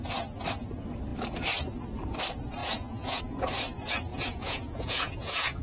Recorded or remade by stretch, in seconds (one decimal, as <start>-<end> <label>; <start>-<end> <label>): 0.0-2.6 recorded; 2.6-3.2 remade; 3.2-4.1 recorded; 4.1-5.6 remade